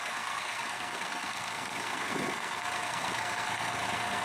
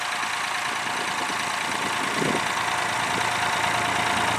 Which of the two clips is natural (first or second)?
second